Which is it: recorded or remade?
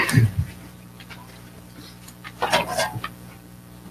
recorded